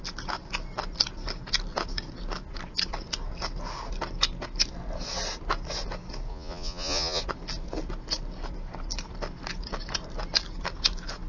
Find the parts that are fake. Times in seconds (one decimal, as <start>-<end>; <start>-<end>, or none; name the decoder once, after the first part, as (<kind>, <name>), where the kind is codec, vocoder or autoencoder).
6.3-7.2 (vocoder, Vocos)